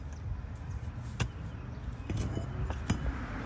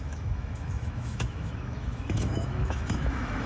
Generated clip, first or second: second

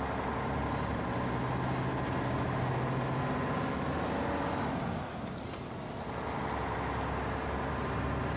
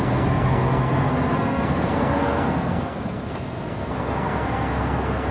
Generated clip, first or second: second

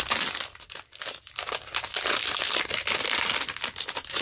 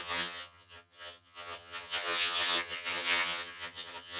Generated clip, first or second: second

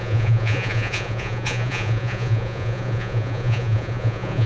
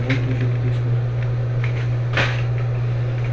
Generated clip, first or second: first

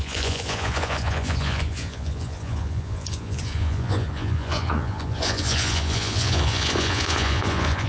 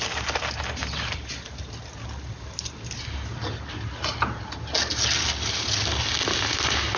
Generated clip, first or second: first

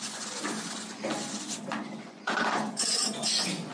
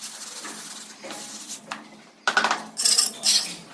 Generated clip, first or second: first